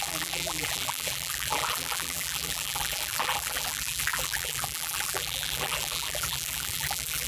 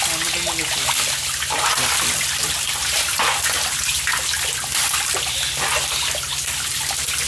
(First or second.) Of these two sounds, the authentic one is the second